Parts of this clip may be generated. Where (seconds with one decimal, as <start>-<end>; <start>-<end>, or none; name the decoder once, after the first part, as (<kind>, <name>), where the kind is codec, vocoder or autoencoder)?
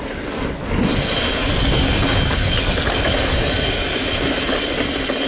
none